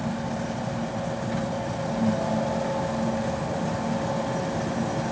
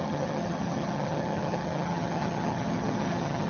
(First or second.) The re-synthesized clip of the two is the second